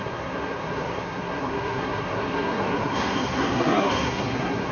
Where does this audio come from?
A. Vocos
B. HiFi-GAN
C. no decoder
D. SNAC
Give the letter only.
D